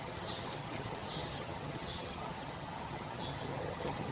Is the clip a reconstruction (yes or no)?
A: yes